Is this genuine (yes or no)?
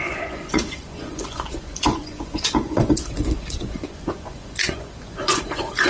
no